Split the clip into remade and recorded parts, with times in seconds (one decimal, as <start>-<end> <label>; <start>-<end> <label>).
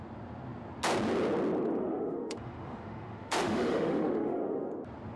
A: 0.0-1.8 recorded; 1.8-4.7 remade; 4.7-5.2 recorded